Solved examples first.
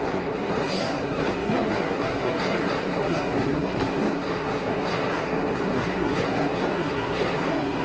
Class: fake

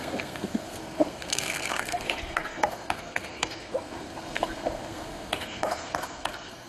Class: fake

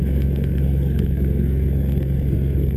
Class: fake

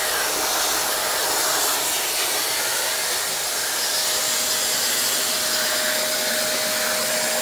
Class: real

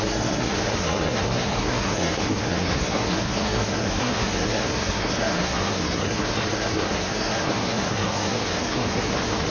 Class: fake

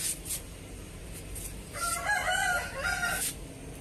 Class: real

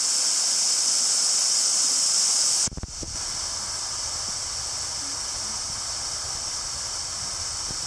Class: real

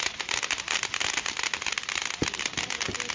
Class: real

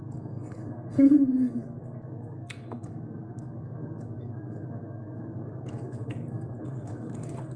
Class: fake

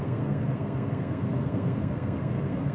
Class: fake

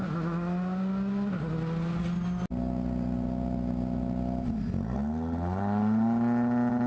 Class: real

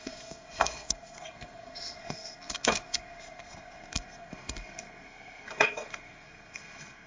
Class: fake